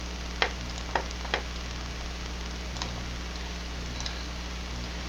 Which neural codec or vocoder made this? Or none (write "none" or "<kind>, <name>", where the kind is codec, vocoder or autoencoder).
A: none